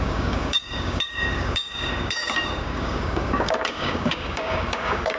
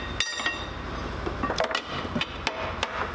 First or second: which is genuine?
second